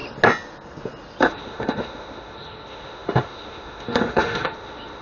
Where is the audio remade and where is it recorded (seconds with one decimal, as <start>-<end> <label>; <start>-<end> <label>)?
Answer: 0.0-1.2 recorded; 1.2-5.0 remade